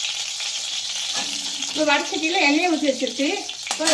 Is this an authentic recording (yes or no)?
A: no